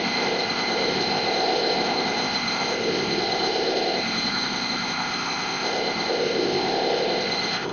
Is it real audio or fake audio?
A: fake